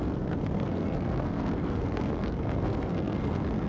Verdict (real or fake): fake